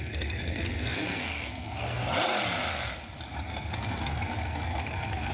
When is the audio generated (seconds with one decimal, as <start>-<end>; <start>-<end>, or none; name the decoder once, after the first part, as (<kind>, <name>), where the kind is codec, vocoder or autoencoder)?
0.0-2.0 (codec, SNAC); 3.5-5.3